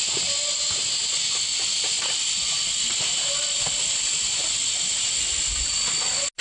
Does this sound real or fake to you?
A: real